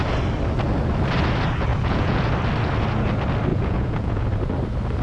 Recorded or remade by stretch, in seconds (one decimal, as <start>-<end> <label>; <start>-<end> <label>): 0.0-1.7 recorded; 1.7-2.2 remade; 2.2-3.5 recorded; 3.5-4.3 remade; 4.3-5.0 recorded